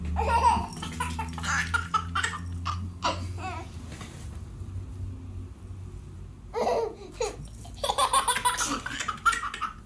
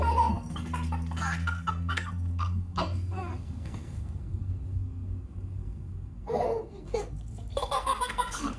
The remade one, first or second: second